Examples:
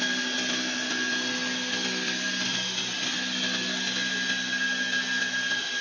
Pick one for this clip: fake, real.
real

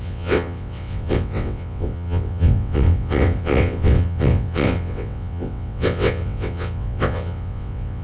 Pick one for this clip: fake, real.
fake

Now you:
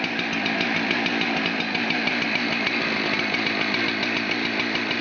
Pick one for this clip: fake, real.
real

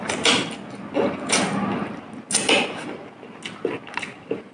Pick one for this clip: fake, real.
real